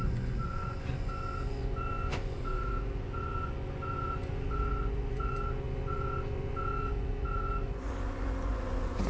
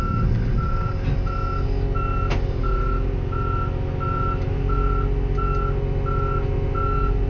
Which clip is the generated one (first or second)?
first